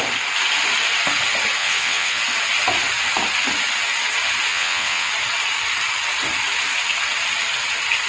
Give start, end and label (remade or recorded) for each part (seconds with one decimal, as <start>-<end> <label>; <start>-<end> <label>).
0.0-1.6 recorded; 1.6-2.2 remade; 2.2-4.5 recorded; 4.5-5.1 remade; 5.1-8.1 recorded